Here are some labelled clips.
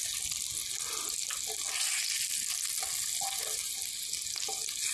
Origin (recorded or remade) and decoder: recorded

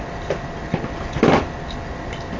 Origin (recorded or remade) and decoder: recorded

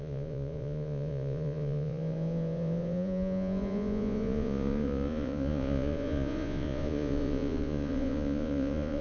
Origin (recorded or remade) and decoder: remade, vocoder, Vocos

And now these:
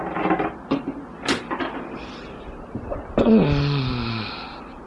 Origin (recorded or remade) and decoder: recorded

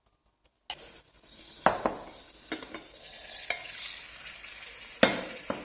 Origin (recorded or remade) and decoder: recorded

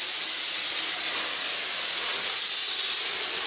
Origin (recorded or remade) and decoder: recorded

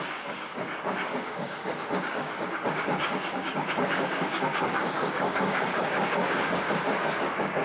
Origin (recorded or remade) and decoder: remade, codec, DAC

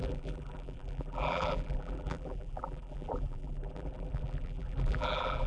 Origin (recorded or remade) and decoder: remade, vocoder, BigVGAN v2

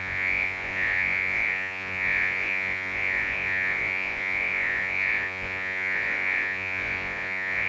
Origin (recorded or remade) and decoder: remade, vocoder, Vocos